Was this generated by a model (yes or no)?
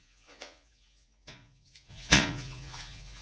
yes